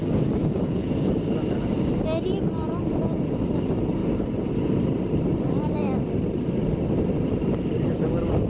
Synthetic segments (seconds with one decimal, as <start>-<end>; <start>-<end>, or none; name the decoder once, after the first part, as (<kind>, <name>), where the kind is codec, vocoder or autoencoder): 0.4-1.1 (vocoder, Vocos)

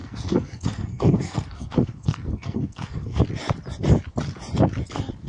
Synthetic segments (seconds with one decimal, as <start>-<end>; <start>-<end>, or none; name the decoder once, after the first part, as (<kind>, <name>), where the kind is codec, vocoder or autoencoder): 0.0-3.2 (codec, SNAC)

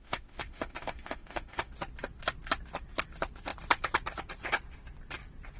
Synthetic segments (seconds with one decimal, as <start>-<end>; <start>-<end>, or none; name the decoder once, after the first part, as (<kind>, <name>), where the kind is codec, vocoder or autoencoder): 0.0-1.7 (autoencoder, DAC-VAE)

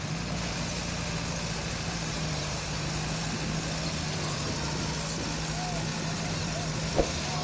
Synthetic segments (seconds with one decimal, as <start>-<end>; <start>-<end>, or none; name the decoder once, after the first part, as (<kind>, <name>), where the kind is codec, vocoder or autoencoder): 1.6-3.2 (vocoder, BigVGAN v2); 5.9-6.7